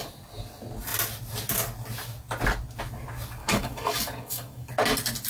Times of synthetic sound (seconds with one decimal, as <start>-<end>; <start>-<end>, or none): 3.4-4.7